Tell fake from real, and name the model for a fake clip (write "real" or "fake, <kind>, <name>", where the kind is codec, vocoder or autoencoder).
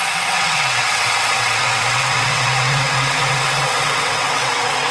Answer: fake, vocoder, WaveNeXt